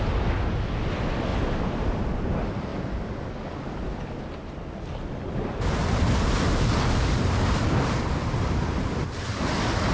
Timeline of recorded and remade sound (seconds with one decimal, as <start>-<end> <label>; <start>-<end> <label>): 0.0-1.3 recorded; 1.3-2.1 remade; 2.1-9.9 recorded